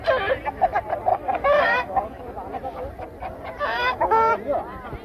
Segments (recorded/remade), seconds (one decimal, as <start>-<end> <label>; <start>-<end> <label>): 0.0-1.1 recorded; 1.1-2.2 remade; 2.2-3.8 recorded; 3.8-4.3 remade; 4.3-5.0 recorded